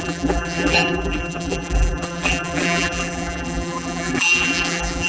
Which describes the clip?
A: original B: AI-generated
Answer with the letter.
B